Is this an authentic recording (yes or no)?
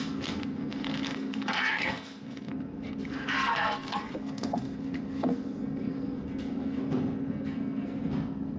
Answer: no